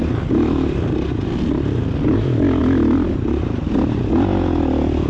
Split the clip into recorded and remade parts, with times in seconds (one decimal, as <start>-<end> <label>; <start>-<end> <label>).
0.0-2.6 recorded; 2.6-4.1 remade; 4.1-5.1 recorded